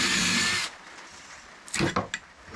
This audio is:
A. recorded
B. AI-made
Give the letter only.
A